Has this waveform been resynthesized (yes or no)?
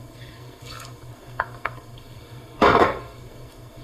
yes